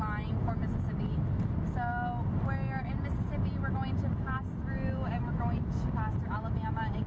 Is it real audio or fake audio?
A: real